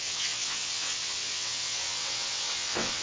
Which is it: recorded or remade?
remade